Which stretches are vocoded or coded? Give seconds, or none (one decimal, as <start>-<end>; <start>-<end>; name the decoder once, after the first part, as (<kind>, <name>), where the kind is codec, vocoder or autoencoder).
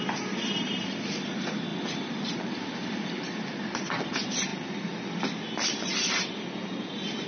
0.0-5.9 (vocoder, BigVGAN v2); 6.8-7.3